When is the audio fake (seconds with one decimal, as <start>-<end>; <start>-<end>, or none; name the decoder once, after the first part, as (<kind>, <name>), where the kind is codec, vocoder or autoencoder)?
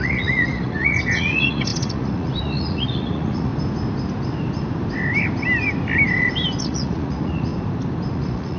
0.0-3.5 (vocoder, Vocos); 6.6-7.5; 8.1-8.6